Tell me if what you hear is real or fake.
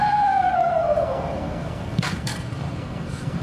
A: fake